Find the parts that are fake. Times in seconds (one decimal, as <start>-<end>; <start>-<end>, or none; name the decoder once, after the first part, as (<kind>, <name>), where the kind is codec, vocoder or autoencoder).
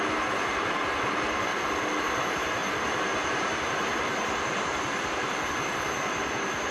0.0-1.5 (vocoder, BigVGAN v2); 2.0-6.7